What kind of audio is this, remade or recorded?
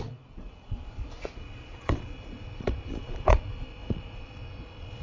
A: remade